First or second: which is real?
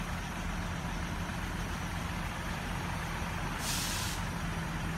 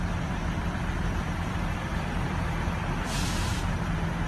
first